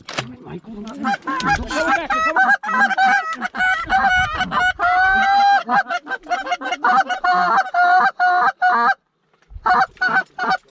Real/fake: real